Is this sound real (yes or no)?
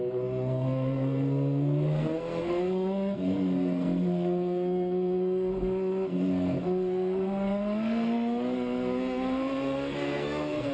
no